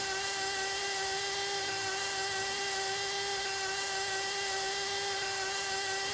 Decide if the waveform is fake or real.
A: real